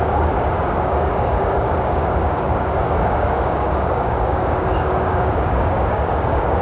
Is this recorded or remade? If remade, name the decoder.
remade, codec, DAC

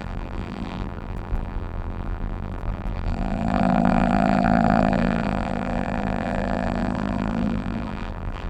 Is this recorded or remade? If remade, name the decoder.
remade, vocoder, BigVGAN v2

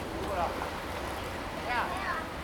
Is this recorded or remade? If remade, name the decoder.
recorded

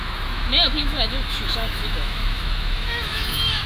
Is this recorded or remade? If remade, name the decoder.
remade, autoencoder, DAC-VAE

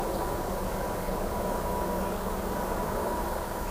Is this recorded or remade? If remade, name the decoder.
remade, codec, DAC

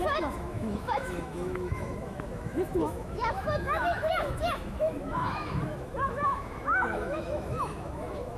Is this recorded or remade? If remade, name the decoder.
remade, autoencoder, DAC-VAE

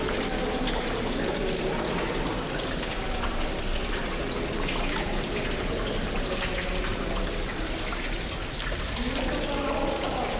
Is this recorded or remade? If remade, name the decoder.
recorded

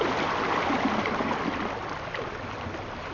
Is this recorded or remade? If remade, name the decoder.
recorded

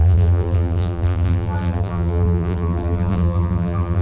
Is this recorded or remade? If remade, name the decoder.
remade, vocoder, BigVGAN v2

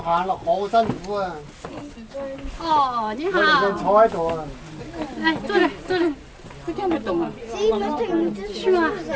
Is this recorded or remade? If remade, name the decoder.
recorded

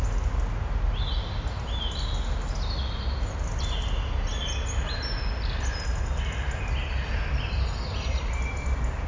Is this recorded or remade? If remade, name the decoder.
recorded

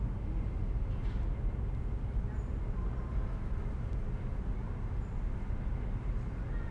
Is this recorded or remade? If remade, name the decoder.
recorded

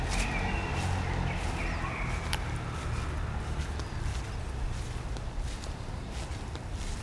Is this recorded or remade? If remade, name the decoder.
recorded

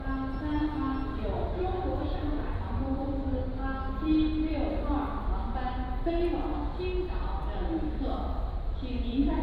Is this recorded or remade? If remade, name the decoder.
recorded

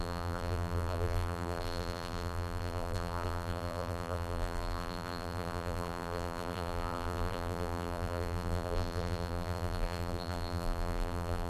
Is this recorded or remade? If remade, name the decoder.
remade, vocoder, BigVGAN v2